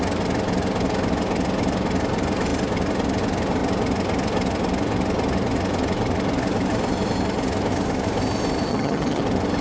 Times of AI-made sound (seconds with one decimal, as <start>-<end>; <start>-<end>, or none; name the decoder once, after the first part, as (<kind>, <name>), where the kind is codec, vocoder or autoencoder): 8.7-9.2 (vocoder, HiFi-GAN)